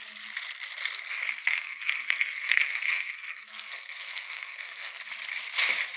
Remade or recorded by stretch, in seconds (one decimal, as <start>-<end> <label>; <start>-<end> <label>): 0.0-1.4 recorded; 1.4-5.0 remade; 5.0-6.0 recorded